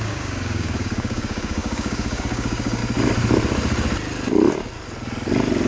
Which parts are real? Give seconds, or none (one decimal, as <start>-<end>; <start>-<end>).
2.8-5.7